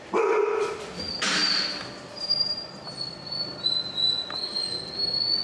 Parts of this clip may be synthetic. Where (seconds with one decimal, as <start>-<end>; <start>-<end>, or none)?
none